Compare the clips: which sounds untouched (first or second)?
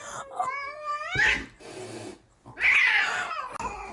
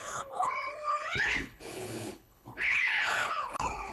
first